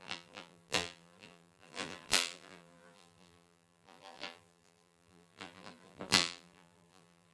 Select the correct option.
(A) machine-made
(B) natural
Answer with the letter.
A